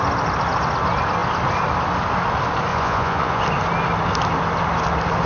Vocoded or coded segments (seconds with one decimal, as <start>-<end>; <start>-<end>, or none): 2.7-3.4